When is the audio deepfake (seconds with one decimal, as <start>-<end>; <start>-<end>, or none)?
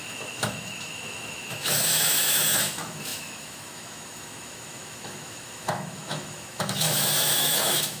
0.0-8.0